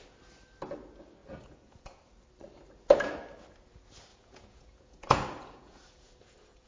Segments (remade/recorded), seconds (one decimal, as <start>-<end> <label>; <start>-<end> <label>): 0.0-1.2 recorded; 1.2-2.1 remade; 2.1-4.1 recorded; 4.1-6.7 remade